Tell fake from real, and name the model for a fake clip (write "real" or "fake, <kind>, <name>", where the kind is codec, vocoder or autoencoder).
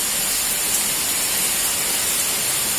real